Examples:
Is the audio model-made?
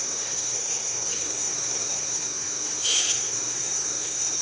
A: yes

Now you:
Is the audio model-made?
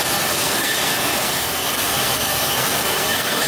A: yes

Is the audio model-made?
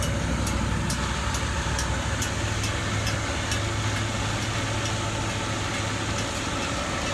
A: no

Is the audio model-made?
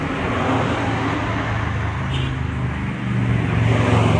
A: no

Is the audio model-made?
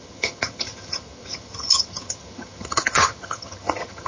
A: yes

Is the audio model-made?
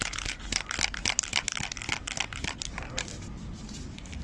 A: yes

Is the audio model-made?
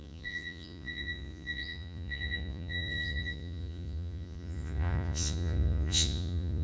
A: yes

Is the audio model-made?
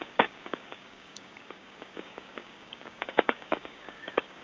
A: yes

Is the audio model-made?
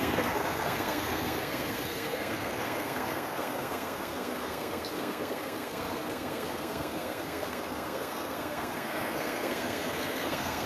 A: yes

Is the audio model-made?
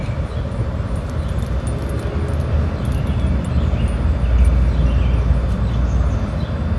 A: no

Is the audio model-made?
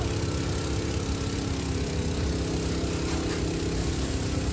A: no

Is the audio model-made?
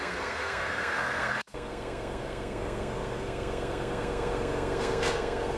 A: yes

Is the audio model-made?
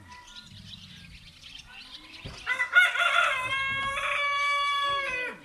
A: no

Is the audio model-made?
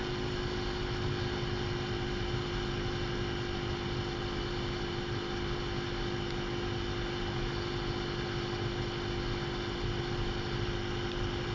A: no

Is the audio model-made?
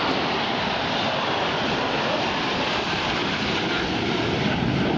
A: no